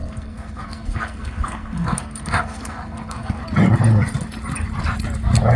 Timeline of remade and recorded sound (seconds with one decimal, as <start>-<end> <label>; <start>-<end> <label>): 0.0-3.4 remade; 3.4-5.6 recorded